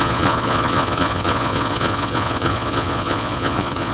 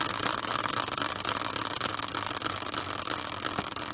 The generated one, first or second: first